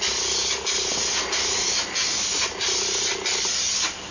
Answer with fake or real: real